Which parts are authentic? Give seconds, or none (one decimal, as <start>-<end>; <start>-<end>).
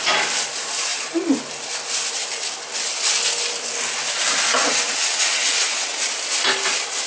0.0-4.6; 6.0-7.1